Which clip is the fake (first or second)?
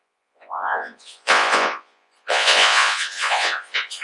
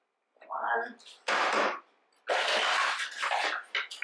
first